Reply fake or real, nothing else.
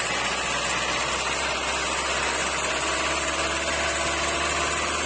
real